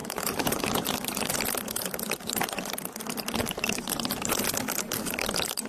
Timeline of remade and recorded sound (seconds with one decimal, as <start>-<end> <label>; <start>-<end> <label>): 0.0-1.3 remade; 1.3-3.4 recorded; 3.4-4.5 remade; 4.5-5.7 recorded